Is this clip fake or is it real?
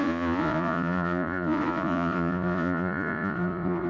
fake